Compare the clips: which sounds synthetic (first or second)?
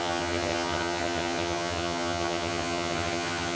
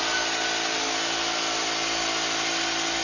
first